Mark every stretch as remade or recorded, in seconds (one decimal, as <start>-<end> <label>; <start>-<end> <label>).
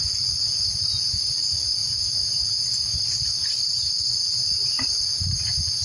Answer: 0.0-5.8 recorded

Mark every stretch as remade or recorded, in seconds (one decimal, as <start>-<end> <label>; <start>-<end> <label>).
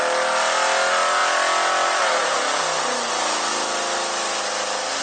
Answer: 0.0-5.0 recorded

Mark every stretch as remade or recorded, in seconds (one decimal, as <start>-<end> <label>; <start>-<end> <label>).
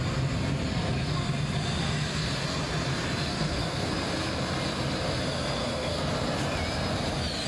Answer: 0.0-3.3 recorded; 3.3-3.9 remade; 3.9-5.6 recorded; 5.6-6.1 remade; 6.1-7.5 recorded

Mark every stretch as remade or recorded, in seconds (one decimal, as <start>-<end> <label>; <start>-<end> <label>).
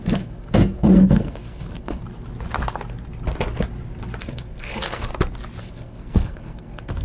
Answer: 0.0-2.0 remade; 2.0-4.2 recorded; 4.2-5.1 remade; 5.1-5.6 recorded; 5.6-7.0 remade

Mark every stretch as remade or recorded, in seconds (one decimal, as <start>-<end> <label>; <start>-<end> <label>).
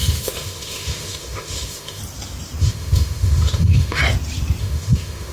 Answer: 0.0-2.0 remade; 2.0-2.6 recorded; 2.6-4.0 remade; 4.0-4.6 recorded; 4.6-5.3 remade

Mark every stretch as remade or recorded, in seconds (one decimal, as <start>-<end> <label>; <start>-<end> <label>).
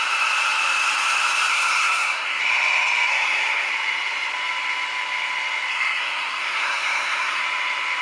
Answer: 0.0-1.5 recorded; 1.5-2.4 remade; 2.4-3.1 recorded; 3.1-3.7 remade; 3.7-5.7 recorded; 5.7-7.4 remade; 7.4-8.0 recorded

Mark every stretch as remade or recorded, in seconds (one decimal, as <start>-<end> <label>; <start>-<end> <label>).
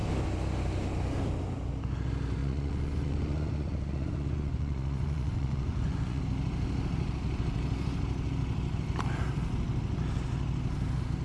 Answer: 0.0-2.4 recorded; 2.4-6.2 remade; 6.2-11.2 recorded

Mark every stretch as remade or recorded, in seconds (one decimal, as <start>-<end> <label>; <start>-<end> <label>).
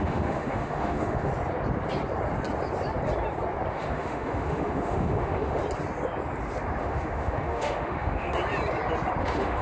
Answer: 0.0-1.3 remade; 1.3-3.7 recorded; 3.7-5.6 remade; 5.6-6.8 recorded; 6.8-8.3 remade; 8.3-9.2 recorded; 9.2-9.6 remade